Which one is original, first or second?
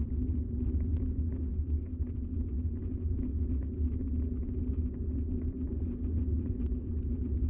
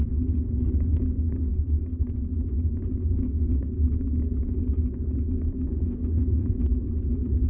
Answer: first